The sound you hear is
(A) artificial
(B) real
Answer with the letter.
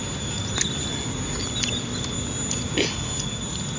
B